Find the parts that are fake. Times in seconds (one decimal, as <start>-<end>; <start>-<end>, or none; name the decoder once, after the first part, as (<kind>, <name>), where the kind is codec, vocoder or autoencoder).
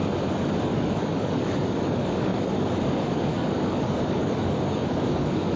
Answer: 0.6-5.6 (codec, DAC)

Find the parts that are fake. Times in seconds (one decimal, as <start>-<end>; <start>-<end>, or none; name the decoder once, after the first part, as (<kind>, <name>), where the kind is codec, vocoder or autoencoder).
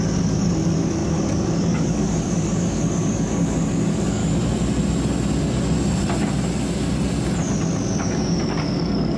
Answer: 0.0-4.2 (codec, DAC); 8.0-9.2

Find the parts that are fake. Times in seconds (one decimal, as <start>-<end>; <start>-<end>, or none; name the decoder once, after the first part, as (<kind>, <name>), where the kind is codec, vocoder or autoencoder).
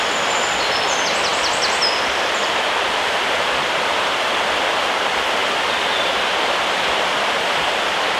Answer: none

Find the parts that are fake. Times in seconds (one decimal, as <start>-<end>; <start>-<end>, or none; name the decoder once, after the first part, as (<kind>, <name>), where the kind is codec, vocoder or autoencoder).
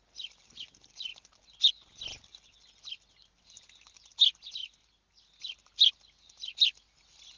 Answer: none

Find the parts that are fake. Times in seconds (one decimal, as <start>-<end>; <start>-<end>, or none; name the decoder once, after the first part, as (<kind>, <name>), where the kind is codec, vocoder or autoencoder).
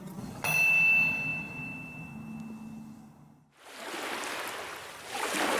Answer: none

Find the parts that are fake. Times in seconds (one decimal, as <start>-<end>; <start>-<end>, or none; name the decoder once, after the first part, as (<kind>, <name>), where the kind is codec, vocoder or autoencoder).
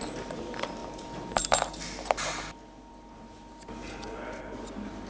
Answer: none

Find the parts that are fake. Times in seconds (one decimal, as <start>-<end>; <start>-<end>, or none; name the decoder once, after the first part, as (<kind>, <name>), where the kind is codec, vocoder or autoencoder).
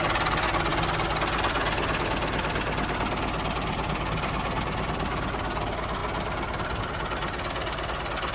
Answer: none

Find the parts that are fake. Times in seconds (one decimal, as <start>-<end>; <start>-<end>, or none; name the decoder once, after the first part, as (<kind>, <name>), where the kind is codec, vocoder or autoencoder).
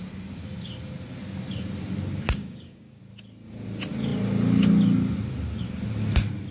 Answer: 2.4-3.0 (codec, DAC)